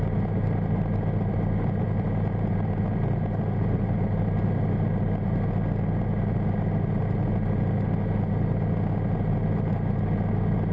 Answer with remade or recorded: recorded